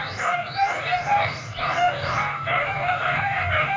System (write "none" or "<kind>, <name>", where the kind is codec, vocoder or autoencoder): codec, DAC